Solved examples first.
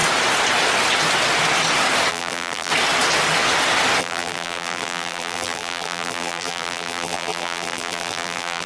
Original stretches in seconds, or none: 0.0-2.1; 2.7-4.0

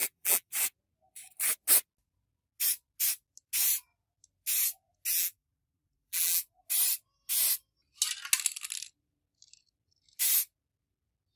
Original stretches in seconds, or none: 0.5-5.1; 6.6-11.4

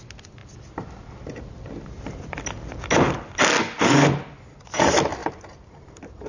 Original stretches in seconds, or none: 0.0-5.2

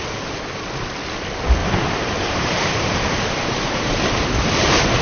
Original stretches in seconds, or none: 0.0-1.6; 3.9-5.0

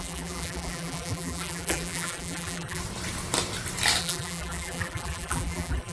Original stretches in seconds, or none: 2.8-4.0

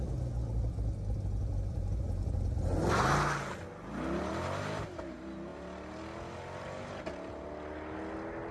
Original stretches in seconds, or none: 0.0-8.5

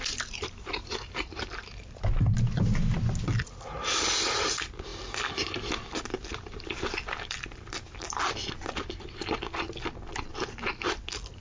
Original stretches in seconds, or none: 4.9-6.3; 8.4-10.3